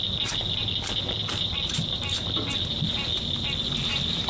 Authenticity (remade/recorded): recorded